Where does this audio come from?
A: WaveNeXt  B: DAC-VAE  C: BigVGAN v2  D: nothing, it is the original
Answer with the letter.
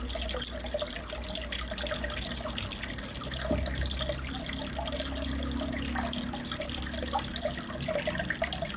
D